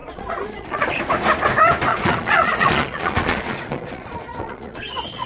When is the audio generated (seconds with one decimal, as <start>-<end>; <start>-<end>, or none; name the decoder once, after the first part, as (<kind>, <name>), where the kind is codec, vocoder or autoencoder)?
0.0-1.0 (vocoder, Vocos); 1.9-5.3